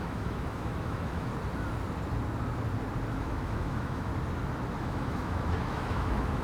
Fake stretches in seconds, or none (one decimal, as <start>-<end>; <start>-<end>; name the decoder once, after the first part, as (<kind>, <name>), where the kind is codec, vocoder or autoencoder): 0.0-1.3 (autoencoder, DAC-VAE); 3.1-4.1; 4.8-6.4